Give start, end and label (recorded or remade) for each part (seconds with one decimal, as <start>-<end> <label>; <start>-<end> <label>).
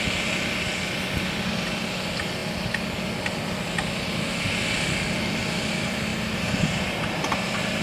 0.0-6.1 recorded; 6.1-7.2 remade; 7.2-7.8 recorded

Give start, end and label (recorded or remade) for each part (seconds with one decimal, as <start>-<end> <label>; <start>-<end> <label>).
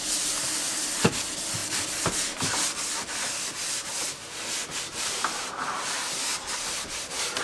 0.0-4.9 recorded; 4.9-6.0 remade; 6.0-7.4 recorded